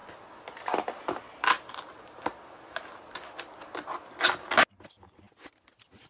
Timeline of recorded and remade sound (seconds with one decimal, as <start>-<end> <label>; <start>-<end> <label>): 0.0-6.1 recorded